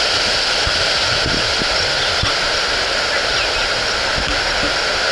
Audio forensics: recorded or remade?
recorded